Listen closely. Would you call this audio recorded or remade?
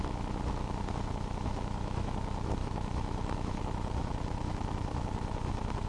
remade